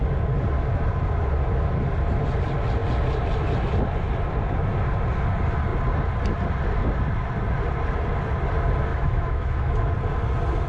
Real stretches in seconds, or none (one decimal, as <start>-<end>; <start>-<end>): 0.0-8.9; 9.9-10.7